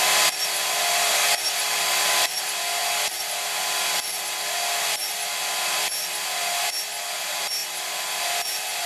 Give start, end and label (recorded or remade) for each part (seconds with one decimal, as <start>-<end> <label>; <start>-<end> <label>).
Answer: 0.0-8.9 recorded